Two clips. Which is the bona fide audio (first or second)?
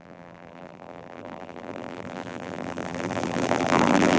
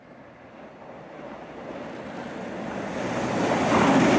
second